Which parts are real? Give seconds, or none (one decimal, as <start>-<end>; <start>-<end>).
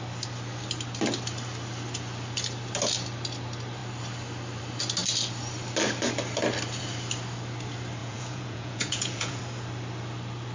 0.0-8.0; 9.4-10.5